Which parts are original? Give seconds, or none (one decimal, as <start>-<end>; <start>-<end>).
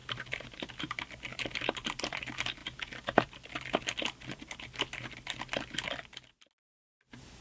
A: 1.0-7.4